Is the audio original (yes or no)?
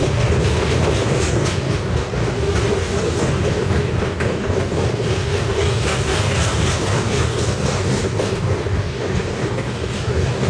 no